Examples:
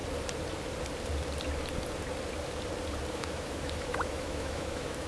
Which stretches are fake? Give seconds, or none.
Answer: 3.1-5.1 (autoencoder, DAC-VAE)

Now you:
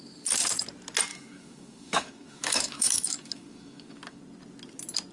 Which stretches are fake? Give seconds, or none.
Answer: 1.1-4.2 (autoencoder, DAC-VAE)

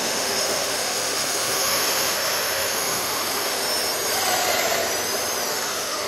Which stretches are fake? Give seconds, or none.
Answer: 0.0-3.6 (autoencoder, DAC-VAE); 5.5-6.1

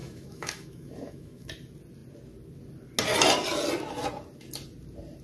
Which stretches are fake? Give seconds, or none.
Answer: 0.0-1.5 (autoencoder, DAC-VAE)

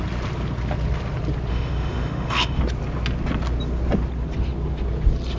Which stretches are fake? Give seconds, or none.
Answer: 1.5-2.6 (autoencoder, DAC-VAE)

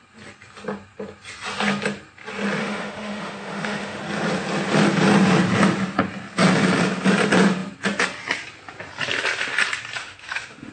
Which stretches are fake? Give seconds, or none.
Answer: 2.6-4.0 (autoencoder, DAC-VAE); 10.0-10.7

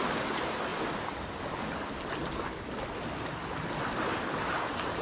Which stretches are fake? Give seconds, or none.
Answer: none

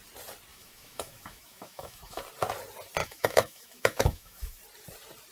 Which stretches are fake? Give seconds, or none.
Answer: 0.5-2.2 (autoencoder, DAC-VAE); 3.0-4.6